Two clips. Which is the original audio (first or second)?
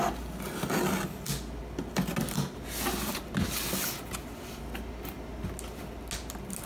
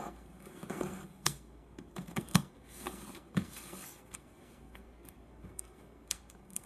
first